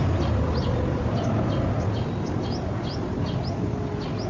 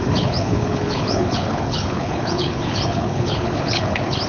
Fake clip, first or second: second